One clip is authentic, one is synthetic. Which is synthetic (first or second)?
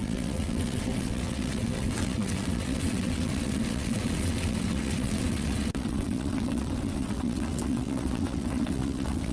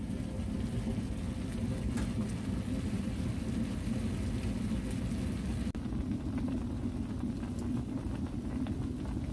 first